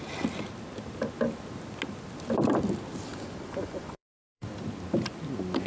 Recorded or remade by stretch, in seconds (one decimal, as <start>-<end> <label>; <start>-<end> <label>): 0.0-3.1 recorded; 3.1-4.5 remade; 4.5-5.7 recorded